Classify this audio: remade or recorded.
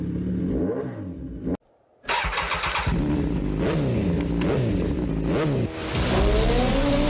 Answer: recorded